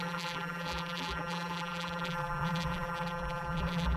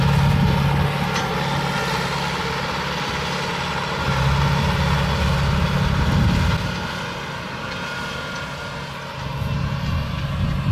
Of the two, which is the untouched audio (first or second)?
second